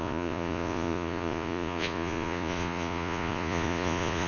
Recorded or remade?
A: remade